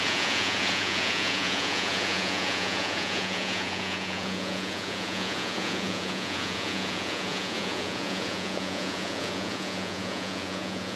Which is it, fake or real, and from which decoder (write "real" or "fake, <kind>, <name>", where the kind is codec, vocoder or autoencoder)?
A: fake, vocoder, Vocos